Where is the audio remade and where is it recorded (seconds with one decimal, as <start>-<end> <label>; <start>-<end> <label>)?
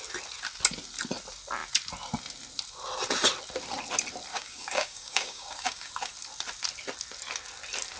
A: 0.0-4.3 recorded; 4.3-5.9 remade; 5.9-8.0 recorded